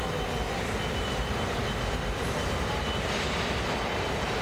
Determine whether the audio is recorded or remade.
recorded